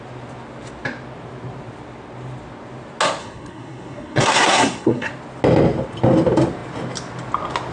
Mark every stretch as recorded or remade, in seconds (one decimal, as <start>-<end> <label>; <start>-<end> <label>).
0.0-3.2 recorded; 3.2-5.1 remade; 5.1-7.7 recorded

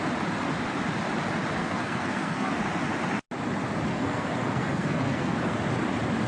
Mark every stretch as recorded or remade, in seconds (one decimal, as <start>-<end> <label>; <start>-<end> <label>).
0.0-1.6 recorded; 1.6-2.5 remade; 2.5-3.9 recorded; 3.9-5.6 remade; 5.6-6.3 recorded

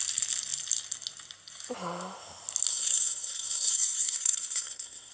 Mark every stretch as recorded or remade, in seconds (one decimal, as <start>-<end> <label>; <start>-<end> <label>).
0.0-2.7 recorded; 2.7-5.1 remade

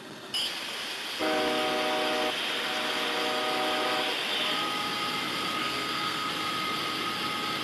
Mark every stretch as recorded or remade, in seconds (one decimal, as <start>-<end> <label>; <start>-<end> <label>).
0.0-5.6 recorded; 5.6-6.3 remade; 6.3-7.6 recorded

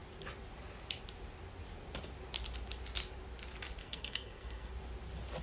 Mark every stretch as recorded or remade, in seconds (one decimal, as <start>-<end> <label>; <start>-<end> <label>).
0.0-3.8 recorded; 3.8-4.7 remade; 4.7-5.4 recorded

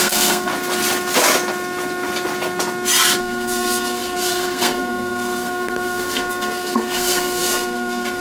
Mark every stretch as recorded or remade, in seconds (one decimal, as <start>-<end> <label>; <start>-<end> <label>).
0.0-0.5 remade; 0.5-3.2 recorded; 3.2-8.2 remade

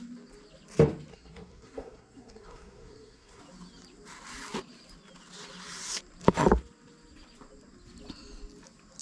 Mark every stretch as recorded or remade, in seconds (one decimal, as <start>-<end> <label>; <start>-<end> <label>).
0.0-1.1 recorded; 1.1-3.4 remade; 3.4-9.0 recorded

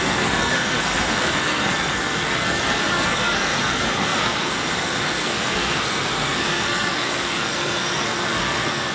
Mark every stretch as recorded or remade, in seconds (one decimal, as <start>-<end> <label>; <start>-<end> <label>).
0.0-8.9 remade